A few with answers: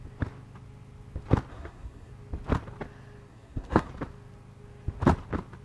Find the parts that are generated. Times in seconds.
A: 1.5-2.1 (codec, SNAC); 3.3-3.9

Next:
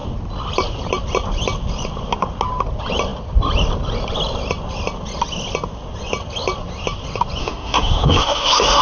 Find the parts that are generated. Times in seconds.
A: 7.4-8.8 (autoencoder, DAC-VAE)

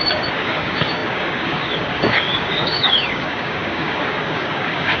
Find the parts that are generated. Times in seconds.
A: 0.0-5.0 (codec, DAC)

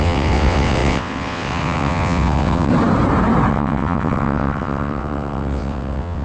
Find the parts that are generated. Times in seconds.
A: 0.0-2.7 (vocoder, WaveNeXt); 3.5-6.2

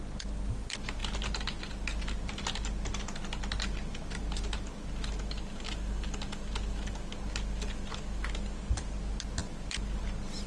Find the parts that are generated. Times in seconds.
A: none

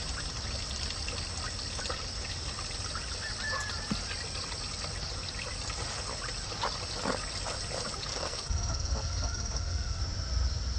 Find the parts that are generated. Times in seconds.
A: 8.1-10.0 (codec, SNAC)